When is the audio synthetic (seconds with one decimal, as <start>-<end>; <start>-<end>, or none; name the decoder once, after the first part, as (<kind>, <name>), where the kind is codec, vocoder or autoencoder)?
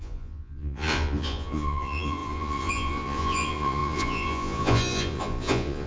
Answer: 0.0-5.9 (vocoder, Vocos)